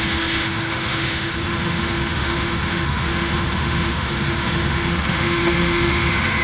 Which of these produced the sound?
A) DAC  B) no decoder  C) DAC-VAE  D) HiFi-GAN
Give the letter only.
C